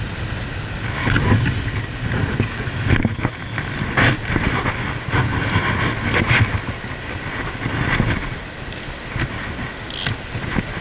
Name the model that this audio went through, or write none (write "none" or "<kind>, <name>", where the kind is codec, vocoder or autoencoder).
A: none